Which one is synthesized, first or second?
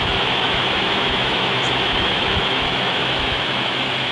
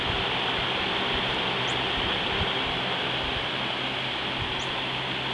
first